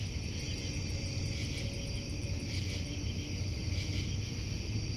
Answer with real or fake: real